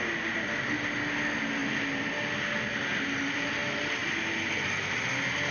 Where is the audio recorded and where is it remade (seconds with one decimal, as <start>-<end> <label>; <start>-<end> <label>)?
0.0-5.5 recorded